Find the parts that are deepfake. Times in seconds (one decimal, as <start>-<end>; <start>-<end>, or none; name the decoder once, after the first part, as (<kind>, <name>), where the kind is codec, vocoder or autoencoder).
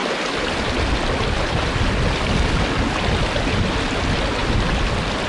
none